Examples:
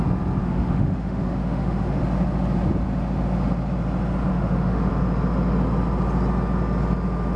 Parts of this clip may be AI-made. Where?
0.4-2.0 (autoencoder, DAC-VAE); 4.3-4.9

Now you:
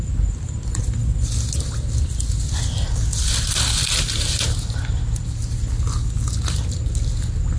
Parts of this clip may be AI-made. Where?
none

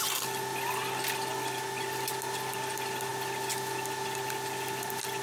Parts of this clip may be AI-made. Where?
none

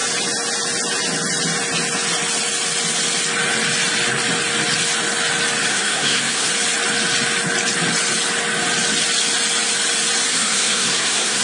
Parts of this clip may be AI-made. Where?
5.7-6.5 (codec, SNAC); 10.3-11.4

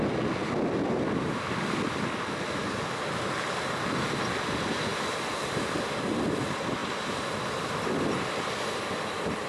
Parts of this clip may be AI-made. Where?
none

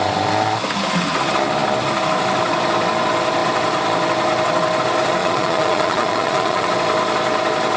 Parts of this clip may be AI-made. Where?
5.2-6.7 (vocoder, Vocos)